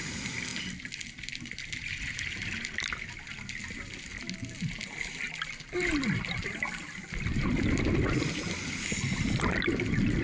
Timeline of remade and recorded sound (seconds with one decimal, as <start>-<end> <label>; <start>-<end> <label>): 0.0-10.2 recorded